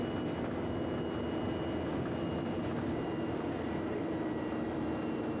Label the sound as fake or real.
real